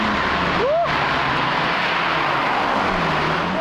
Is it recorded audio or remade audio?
recorded